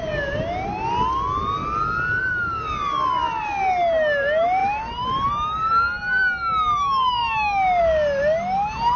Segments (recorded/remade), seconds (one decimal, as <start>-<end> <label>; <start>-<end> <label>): 0.0-9.0 recorded